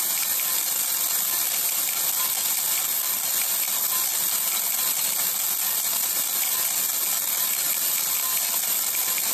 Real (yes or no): yes